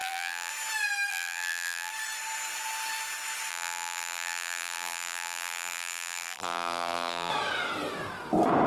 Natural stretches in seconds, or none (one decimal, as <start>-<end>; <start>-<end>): 0.5-1.1; 1.9-3.5; 7.3-8.7